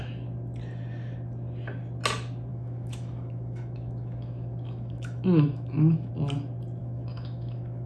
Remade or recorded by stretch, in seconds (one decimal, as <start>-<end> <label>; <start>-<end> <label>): 0.0-2.5 recorded; 2.5-6.1 remade; 6.1-6.8 recorded; 6.8-7.9 remade